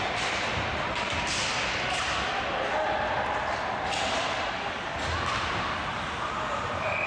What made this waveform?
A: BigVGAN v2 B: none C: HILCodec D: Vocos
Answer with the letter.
B